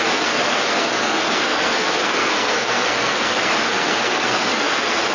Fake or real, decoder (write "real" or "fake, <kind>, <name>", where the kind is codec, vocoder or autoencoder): fake, codec, SNAC